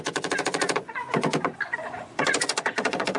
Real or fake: fake